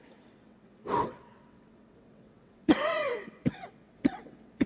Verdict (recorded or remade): remade